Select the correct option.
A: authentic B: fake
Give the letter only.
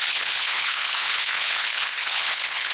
B